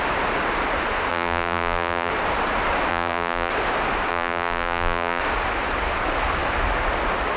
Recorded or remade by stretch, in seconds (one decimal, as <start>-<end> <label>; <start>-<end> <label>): 0.0-1.1 recorded; 1.1-2.1 remade; 2.1-2.9 recorded; 2.9-3.5 remade; 3.5-4.1 recorded; 4.1-5.2 remade; 5.2-7.4 recorded